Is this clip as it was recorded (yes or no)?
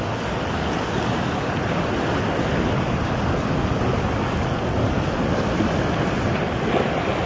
yes